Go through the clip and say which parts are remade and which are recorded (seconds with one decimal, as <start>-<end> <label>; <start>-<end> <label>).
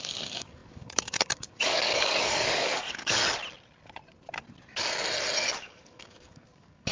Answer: 0.0-3.2 remade; 3.2-5.6 recorded; 5.6-6.9 remade